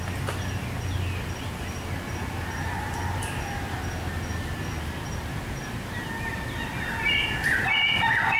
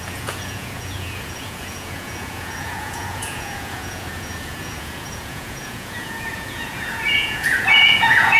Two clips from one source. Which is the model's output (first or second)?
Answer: second